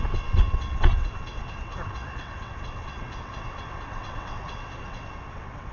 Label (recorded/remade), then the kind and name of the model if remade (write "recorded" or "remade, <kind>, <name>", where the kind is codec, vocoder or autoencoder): remade, vocoder, WaveNeXt